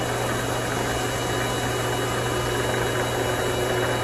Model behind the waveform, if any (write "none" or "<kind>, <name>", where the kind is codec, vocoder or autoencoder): none